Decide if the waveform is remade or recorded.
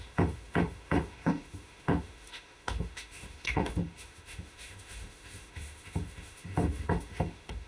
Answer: remade